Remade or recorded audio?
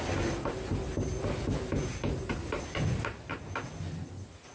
recorded